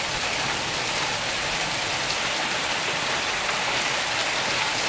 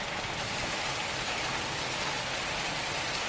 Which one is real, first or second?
second